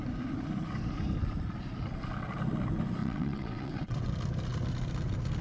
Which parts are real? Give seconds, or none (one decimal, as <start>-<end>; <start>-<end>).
0.0-3.0; 4.1-5.4